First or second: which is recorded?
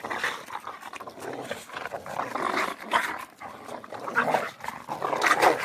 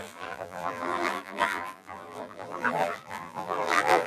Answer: first